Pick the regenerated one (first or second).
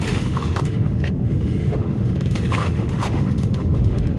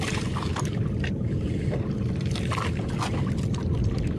first